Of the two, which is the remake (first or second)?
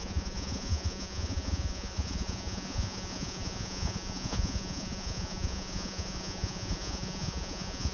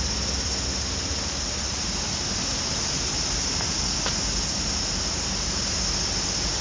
first